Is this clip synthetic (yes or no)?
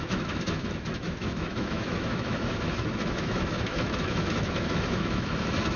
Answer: yes